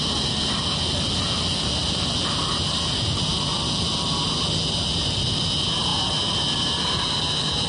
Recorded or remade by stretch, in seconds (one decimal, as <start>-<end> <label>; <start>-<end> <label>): 0.0-7.7 recorded